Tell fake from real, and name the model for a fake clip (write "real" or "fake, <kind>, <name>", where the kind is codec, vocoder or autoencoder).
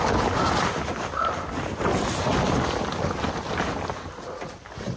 real